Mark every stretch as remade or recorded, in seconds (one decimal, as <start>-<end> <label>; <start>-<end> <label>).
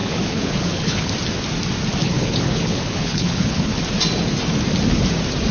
0.0-1.1 remade; 1.1-2.0 recorded; 2.0-3.8 remade; 3.8-5.5 recorded